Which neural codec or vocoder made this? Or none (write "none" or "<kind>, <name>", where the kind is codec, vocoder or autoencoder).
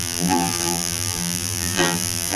vocoder, BigVGAN v2